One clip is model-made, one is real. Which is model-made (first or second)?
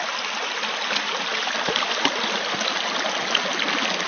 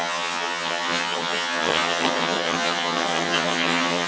second